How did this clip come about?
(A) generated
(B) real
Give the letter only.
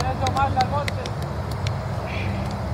B